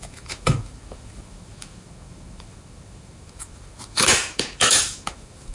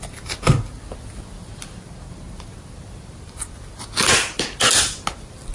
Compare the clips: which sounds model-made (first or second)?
first